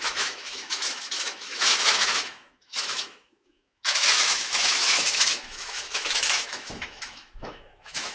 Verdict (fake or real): fake